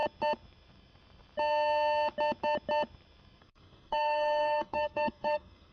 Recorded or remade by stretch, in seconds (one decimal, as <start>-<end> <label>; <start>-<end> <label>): 0.0-3.4 recorded; 3.4-5.7 remade